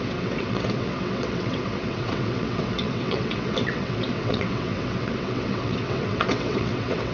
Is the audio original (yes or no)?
no